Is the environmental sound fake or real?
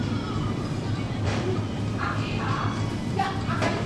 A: real